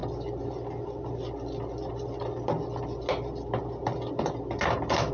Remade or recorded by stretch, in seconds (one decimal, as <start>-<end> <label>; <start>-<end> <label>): 0.0-5.1 recorded